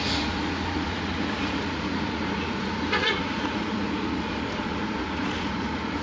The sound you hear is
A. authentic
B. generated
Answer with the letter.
B